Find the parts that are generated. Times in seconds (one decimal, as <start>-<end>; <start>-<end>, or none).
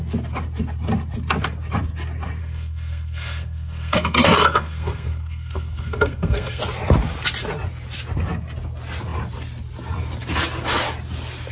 2.4-6.6